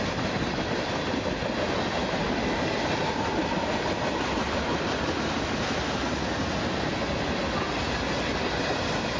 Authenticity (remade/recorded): recorded